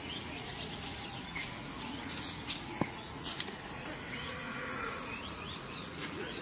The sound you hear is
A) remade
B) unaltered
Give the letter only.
A